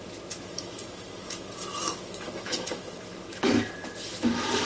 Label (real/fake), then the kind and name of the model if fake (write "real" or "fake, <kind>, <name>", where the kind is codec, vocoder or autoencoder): fake, autoencoder, DAC-VAE